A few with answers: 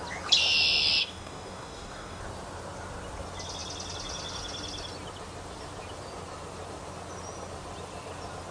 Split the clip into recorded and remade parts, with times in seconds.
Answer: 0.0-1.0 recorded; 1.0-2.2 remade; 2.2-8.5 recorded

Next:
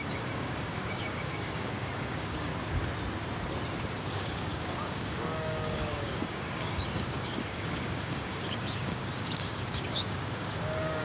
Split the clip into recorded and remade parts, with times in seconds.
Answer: 0.0-2.5 remade; 2.5-4.1 recorded; 4.1-11.0 remade

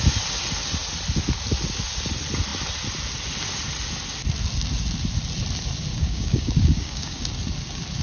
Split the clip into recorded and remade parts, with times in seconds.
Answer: 0.0-5.9 recorded; 5.9-7.2 remade; 7.2-8.0 recorded

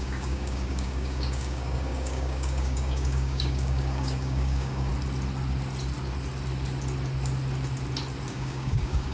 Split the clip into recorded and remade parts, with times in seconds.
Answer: 0.0-4.9 remade; 4.9-8.3 recorded; 8.3-9.1 remade

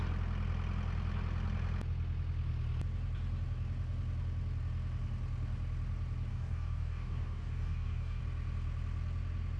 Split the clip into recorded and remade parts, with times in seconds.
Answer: 0.0-6.3 recorded; 6.3-8.2 remade; 8.2-9.6 recorded

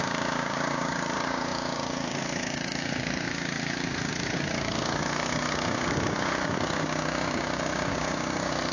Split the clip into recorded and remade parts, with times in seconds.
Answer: 0.0-8.7 remade

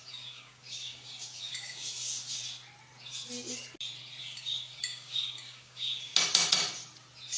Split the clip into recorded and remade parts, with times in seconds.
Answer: 0.0-2.4 remade; 2.4-4.2 recorded; 4.2-6.1 remade; 6.1-7.4 recorded

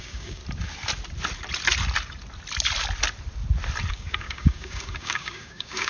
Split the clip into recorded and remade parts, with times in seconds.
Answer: 0.0-0.4 remade; 0.4-3.9 recorded; 3.9-5.9 remade